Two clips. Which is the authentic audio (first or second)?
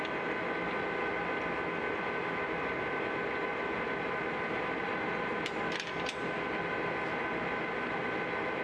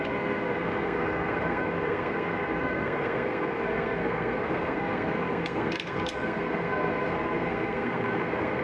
first